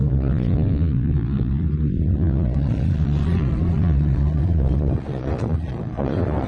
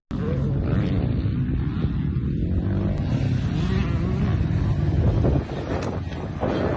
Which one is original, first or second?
second